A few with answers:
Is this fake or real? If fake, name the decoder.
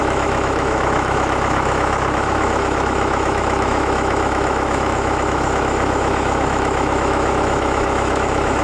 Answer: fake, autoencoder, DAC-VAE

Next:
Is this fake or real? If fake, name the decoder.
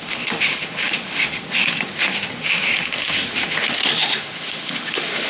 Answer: fake, autoencoder, DAC-VAE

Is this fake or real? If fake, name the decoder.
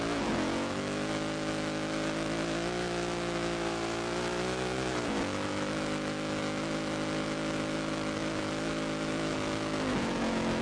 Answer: fake, autoencoder, DAC-VAE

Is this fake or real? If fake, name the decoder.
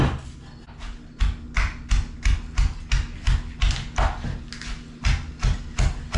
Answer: real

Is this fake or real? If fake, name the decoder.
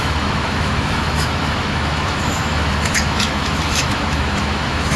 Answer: fake, autoencoder, DAC-VAE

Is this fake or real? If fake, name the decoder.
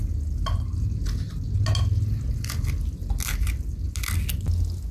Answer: real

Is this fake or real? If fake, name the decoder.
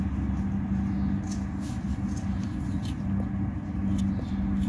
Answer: real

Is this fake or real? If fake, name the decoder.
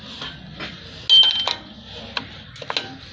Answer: real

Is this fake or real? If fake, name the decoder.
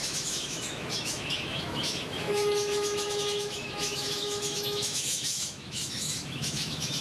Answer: fake, autoencoder, DAC-VAE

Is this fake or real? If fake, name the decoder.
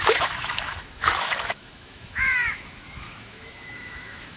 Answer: fake, autoencoder, DAC-VAE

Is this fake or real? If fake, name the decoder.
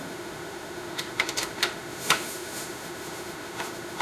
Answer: fake, autoencoder, DAC-VAE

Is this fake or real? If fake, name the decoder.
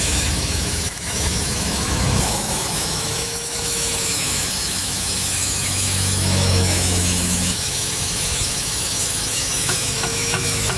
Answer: fake, autoencoder, DAC-VAE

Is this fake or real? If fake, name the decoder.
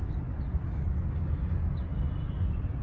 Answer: real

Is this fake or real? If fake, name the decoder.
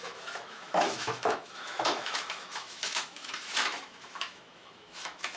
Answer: fake, autoencoder, DAC-VAE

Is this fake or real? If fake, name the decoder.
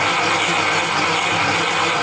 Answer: real